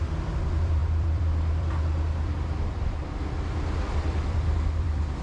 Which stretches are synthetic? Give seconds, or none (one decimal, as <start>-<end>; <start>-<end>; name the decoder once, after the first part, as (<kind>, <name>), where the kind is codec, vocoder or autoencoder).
0.0-5.2 (vocoder, BigVGAN v2)